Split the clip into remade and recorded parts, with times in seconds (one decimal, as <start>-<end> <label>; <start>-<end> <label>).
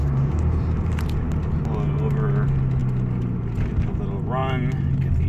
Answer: 0.0-5.3 recorded